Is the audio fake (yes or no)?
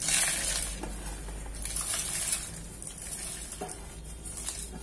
no